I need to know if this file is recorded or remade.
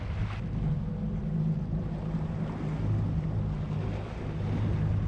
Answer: recorded